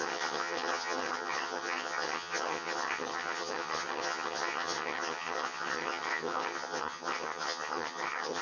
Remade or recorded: remade